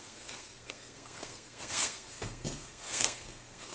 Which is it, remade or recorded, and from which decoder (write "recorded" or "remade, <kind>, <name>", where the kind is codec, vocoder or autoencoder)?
remade, codec, SNAC